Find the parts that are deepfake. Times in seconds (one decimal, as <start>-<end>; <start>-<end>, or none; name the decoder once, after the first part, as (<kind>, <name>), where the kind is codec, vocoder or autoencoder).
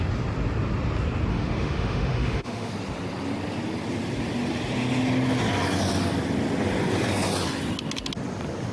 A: 1.3-2.7 (autoencoder, DAC-VAE)